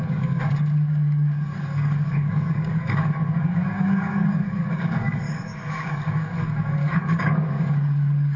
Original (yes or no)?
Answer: no